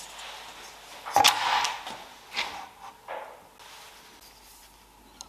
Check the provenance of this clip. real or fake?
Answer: real